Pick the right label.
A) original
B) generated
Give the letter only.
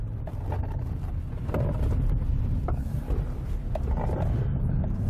A